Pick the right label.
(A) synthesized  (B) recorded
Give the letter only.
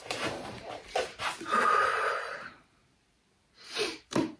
A